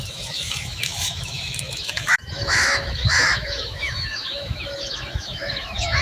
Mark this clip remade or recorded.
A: remade